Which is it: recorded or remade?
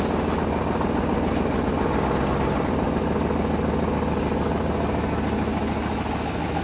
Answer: recorded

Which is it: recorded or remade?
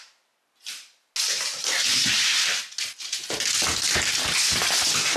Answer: recorded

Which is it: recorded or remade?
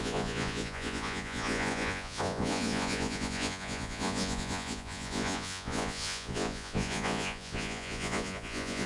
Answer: remade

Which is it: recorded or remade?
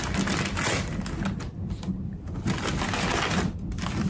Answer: recorded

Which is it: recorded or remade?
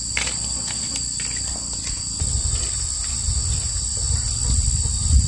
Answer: recorded